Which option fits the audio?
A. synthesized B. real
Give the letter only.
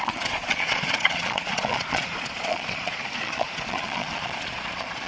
A